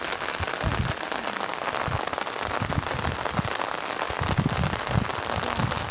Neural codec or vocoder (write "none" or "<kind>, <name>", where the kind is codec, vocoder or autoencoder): none